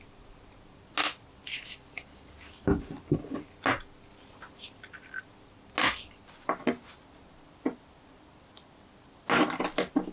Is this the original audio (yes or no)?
yes